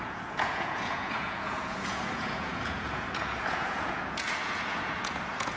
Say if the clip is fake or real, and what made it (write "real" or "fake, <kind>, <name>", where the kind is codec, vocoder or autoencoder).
fake, vocoder, Vocos